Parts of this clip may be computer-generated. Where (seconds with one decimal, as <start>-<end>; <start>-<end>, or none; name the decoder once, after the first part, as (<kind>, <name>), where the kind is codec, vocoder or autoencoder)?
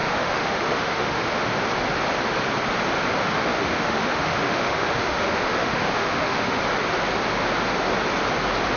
0.0-1.4 (autoencoder, DAC-VAE); 3.2-6.6